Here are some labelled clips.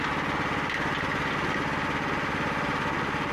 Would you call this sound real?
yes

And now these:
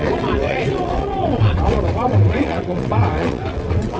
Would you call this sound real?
no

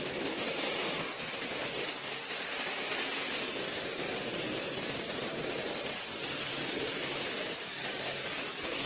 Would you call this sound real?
yes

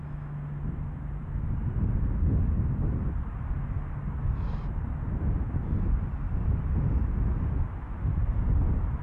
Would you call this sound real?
yes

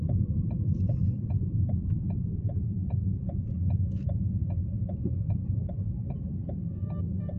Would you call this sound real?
no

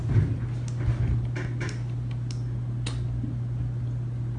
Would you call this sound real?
yes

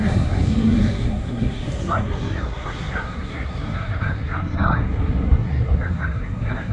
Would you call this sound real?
no